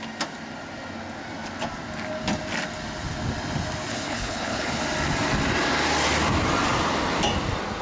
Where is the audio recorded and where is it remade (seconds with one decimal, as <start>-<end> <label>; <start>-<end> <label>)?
0.0-3.9 recorded; 3.9-4.8 remade; 4.8-7.8 recorded